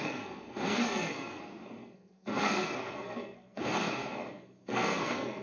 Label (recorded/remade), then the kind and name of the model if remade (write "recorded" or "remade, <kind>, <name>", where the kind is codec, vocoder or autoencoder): remade, codec, SNAC